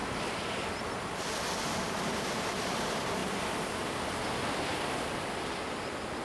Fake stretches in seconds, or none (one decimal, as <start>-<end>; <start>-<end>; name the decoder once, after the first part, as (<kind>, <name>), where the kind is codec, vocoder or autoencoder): none